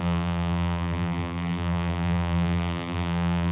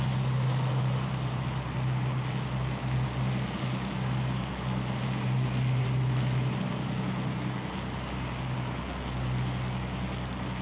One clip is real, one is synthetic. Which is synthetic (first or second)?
first